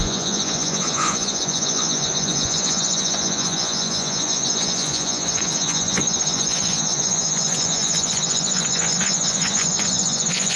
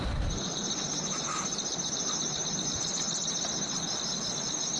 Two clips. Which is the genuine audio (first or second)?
second